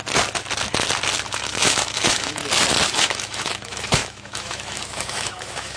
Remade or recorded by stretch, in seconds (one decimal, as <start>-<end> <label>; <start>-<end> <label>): 0.0-1.3 recorded; 1.3-2.4 remade; 2.4-2.9 recorded; 2.9-5.8 remade